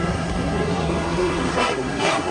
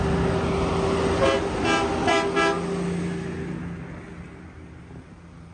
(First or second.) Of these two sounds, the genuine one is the second